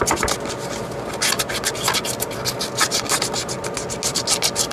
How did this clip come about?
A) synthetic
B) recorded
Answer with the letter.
B